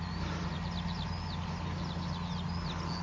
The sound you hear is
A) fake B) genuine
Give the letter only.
B